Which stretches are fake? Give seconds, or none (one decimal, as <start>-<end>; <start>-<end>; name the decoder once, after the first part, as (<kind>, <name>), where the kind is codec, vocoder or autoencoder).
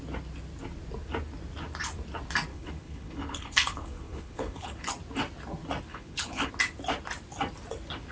2.5-4.9 (codec, HILCodec); 5.9-6.5